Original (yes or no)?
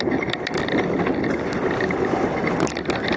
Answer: yes